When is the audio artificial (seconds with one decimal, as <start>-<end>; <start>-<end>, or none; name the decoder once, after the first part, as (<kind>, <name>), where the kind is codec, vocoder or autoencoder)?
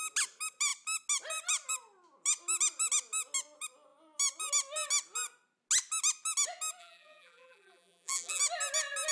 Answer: 6.8-8.4 (vocoder, BigVGAN v2)